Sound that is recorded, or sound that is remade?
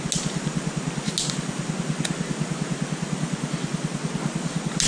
recorded